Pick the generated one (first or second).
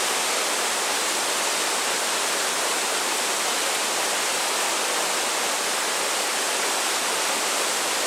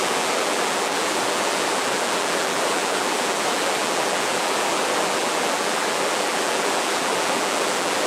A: second